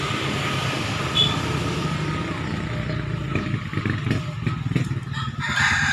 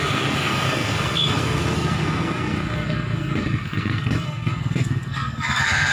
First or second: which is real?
first